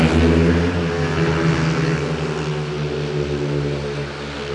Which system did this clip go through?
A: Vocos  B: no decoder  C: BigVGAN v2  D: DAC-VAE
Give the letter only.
B